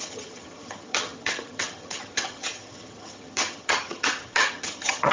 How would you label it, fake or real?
fake